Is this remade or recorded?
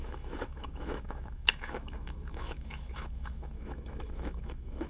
remade